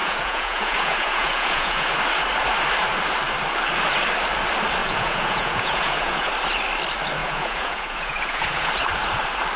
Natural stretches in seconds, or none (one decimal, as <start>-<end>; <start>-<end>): 1.9-4.8; 6.3-7.2; 8.7-9.6